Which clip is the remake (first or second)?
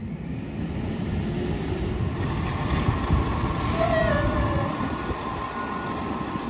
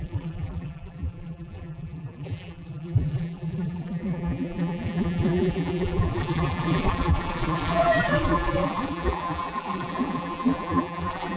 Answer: second